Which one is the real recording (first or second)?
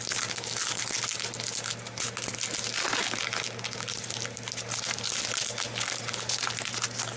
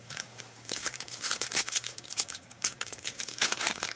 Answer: first